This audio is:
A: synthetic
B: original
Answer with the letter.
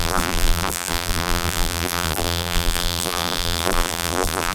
A